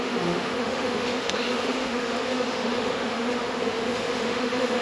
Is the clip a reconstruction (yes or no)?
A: yes